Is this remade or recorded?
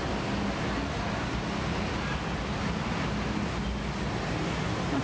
recorded